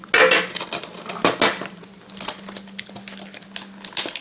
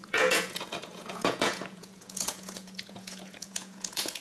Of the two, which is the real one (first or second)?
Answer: first